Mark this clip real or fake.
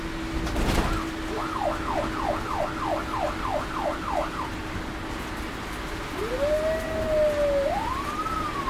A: real